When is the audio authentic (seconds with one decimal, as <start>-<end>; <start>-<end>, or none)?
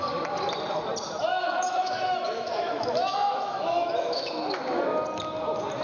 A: 0.0-1.3; 4.6-5.8